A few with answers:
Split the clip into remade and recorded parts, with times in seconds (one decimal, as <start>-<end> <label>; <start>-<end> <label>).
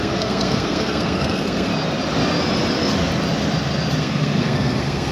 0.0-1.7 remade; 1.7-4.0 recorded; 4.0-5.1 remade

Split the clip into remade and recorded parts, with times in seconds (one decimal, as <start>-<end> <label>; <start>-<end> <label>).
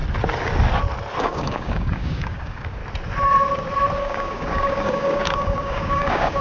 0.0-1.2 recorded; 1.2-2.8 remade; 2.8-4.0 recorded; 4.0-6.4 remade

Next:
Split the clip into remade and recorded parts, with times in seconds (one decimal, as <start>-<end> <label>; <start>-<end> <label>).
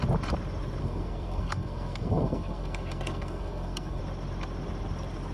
0.0-0.8 recorded; 0.8-4.0 remade; 4.0-5.3 recorded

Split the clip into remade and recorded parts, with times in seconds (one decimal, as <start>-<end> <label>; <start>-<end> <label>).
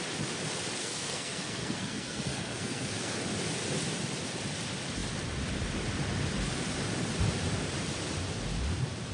0.0-0.8 recorded; 0.8-3.2 remade; 3.2-9.1 recorded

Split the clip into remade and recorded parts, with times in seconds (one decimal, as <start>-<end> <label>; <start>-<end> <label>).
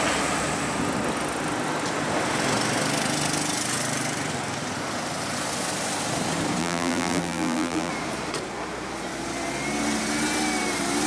0.0-6.6 recorded; 6.6-7.9 remade; 7.9-11.1 recorded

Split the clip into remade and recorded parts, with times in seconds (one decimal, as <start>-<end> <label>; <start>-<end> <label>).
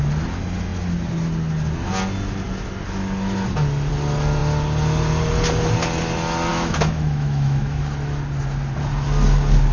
0.0-6.5 recorded; 6.5-7.8 remade; 7.8-9.7 recorded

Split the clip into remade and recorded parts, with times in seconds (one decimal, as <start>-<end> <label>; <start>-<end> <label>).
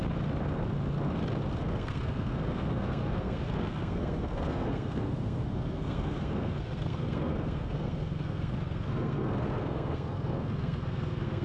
0.0-1.6 recorded; 1.6-11.4 remade